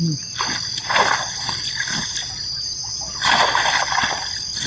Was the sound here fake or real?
real